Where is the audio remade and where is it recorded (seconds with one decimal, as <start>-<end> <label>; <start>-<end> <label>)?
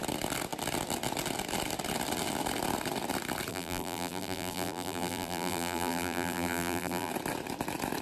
0.0-3.5 recorded; 3.5-7.1 remade; 7.1-8.0 recorded